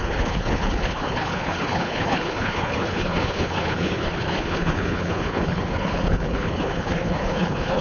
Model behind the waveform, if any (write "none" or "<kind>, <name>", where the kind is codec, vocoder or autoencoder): codec, HILCodec